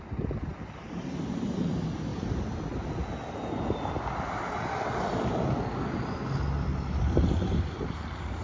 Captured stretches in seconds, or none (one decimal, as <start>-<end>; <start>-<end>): 2.1-7.0